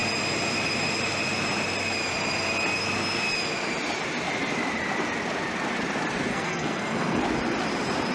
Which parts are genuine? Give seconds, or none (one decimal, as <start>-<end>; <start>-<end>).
0.0-6.3; 7.2-8.1

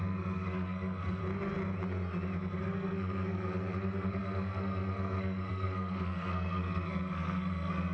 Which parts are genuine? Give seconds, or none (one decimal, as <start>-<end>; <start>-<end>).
1.2-2.6

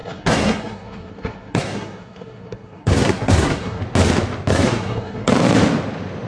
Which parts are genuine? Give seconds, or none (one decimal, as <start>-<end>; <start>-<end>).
3.8-4.5; 5.3-6.3

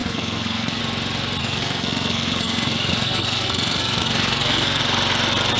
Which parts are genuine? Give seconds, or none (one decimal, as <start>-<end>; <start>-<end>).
0.8-1.4; 4.8-5.6